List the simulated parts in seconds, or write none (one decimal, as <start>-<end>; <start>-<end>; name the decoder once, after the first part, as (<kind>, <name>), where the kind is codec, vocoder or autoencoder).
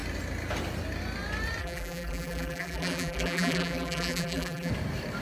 1.6-4.7 (vocoder, BigVGAN v2)